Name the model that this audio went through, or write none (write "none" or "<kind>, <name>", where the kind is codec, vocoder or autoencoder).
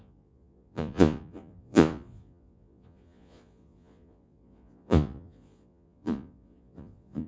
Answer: vocoder, Vocos